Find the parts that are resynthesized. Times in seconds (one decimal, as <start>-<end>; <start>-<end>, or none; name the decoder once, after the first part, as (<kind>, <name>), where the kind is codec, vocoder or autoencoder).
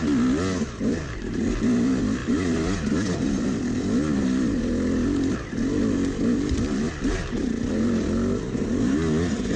2.2-5.3 (vocoder, BigVGAN v2)